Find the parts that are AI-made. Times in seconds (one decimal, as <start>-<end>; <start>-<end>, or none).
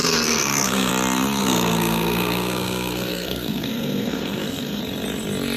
0.0-0.9; 1.4-4.8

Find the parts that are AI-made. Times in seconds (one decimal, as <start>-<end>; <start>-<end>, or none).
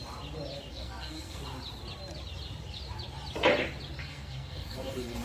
0.7-1.4; 4.0-5.2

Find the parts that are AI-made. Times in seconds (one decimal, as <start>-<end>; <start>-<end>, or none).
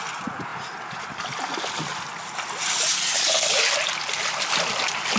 none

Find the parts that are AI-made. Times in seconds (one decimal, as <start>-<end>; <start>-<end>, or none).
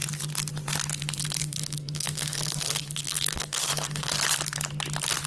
1.4-4.1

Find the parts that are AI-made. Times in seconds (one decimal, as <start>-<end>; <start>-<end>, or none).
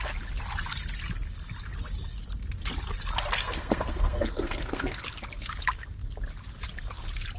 3.4-5.0